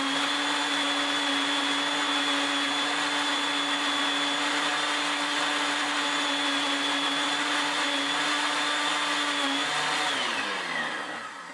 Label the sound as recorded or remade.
recorded